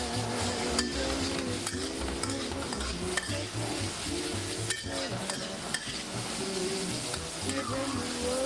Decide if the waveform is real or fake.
real